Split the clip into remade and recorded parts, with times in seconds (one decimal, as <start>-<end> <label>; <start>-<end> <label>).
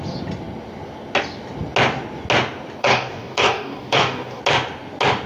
0.0-2.8 recorded; 2.8-4.4 remade; 4.4-5.3 recorded